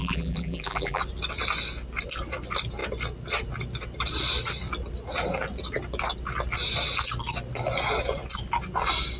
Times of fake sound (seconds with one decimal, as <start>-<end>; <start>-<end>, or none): 0.0-1.0